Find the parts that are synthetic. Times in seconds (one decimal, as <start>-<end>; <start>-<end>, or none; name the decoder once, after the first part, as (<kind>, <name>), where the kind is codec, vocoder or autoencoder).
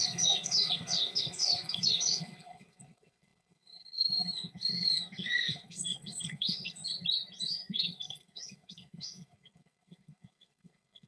0.0-6.8 (codec, SNAC); 7.4-11.1